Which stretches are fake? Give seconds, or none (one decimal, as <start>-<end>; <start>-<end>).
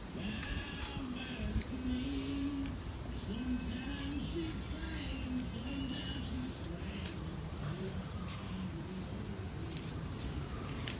0.0-0.9; 6.2-8.4; 9.9-11.0